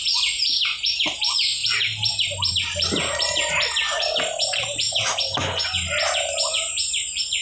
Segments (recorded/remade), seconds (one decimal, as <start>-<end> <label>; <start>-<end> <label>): 0.0-7.4 recorded